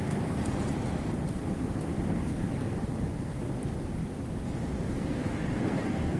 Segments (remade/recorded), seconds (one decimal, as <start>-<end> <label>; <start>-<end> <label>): 0.0-0.4 remade; 0.4-1.3 recorded; 1.3-3.6 remade; 3.6-4.9 recorded; 4.9-6.2 remade